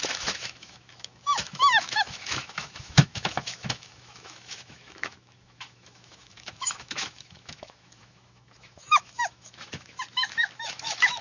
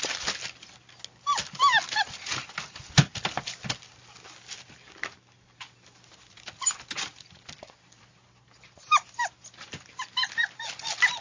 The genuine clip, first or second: second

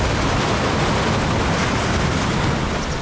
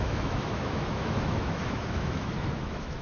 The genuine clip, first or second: first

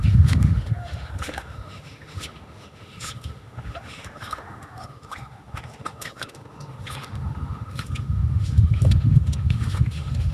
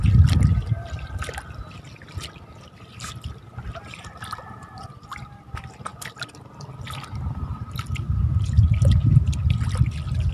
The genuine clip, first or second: second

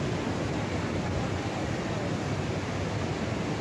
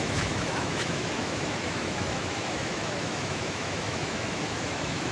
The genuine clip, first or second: first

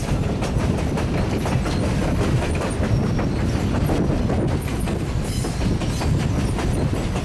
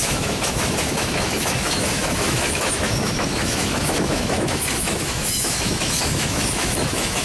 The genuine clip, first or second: first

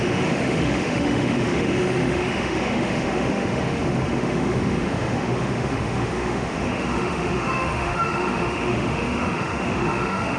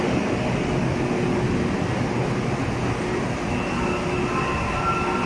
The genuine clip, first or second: second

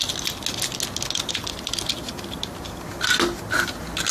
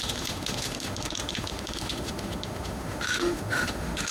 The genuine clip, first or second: first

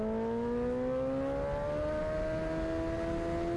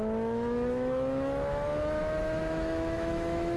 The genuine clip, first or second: first